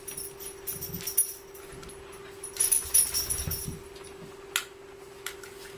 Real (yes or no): yes